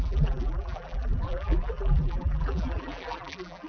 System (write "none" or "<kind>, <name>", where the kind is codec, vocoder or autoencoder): vocoder, BigVGAN v2